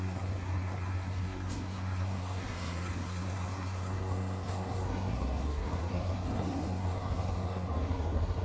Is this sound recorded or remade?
remade